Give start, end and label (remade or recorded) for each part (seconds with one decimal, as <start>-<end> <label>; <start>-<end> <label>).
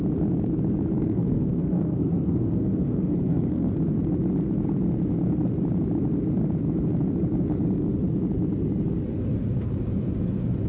0.0-1.0 recorded; 1.0-3.7 remade; 3.7-10.7 recorded